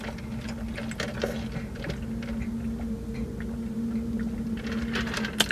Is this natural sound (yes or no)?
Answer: yes